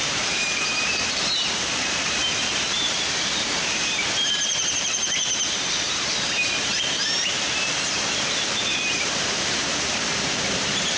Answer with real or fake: fake